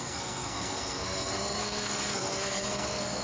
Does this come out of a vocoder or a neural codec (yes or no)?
yes